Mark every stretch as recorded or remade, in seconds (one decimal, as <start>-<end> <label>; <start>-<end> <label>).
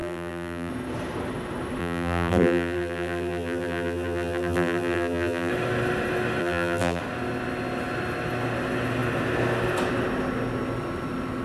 0.0-0.7 remade; 0.7-1.8 recorded; 1.8-5.5 remade; 5.5-6.4 recorded; 6.4-7.0 remade; 7.0-11.4 recorded